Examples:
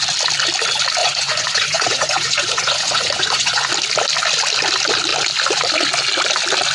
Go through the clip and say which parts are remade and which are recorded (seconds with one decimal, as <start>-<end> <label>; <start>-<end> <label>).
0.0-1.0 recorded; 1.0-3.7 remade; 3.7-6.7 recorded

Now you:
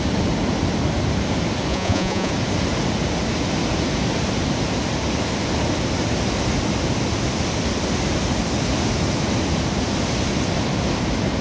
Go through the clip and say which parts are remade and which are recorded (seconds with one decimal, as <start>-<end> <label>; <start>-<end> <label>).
0.0-1.7 recorded; 1.7-2.3 remade; 2.3-11.4 recorded

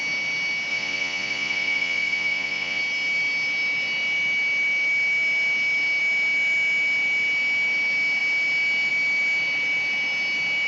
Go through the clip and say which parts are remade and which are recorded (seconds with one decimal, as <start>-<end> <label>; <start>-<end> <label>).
0.0-0.7 recorded; 0.7-2.8 remade; 2.8-10.7 recorded

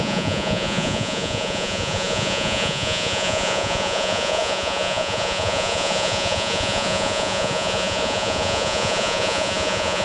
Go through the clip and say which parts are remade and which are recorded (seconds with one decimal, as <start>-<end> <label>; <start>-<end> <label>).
0.0-10.0 remade

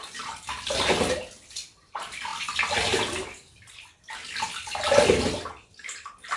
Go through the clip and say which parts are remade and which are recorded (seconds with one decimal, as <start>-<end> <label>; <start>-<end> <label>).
0.0-6.4 recorded

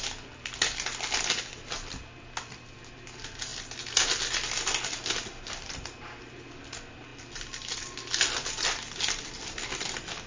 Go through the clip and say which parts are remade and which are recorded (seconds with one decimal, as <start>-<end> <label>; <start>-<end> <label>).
0.0-10.3 recorded